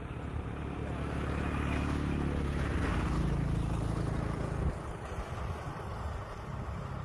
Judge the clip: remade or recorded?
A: recorded